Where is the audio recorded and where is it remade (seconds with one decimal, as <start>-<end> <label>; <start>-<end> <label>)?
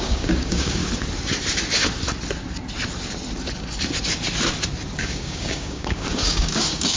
0.0-0.8 remade; 0.8-5.0 recorded; 5.0-7.0 remade